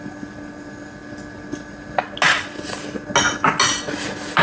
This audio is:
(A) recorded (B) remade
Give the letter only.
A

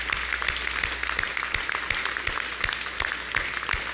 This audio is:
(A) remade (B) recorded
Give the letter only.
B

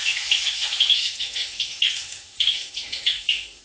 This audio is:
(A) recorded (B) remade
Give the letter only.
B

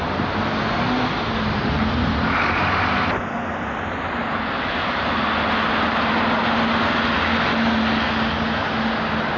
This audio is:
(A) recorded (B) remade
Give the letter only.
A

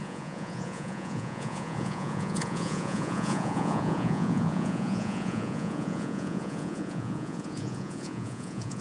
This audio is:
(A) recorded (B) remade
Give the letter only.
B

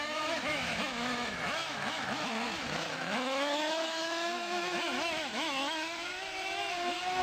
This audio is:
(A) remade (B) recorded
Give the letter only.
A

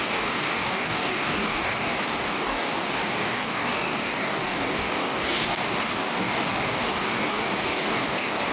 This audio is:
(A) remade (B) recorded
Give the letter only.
A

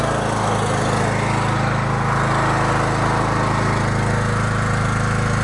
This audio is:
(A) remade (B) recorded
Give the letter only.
B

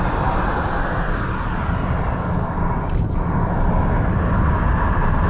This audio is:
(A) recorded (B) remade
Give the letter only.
A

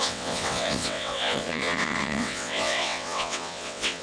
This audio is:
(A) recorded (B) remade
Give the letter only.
B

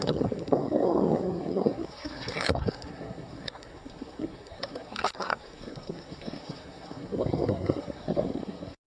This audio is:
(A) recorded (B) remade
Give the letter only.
B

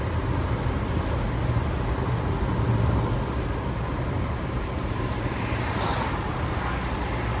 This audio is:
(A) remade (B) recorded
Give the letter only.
B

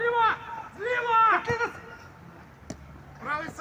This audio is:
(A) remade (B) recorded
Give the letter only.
B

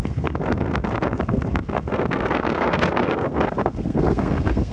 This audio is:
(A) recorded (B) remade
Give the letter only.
B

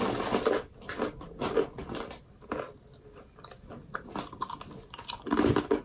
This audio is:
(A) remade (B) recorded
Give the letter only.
B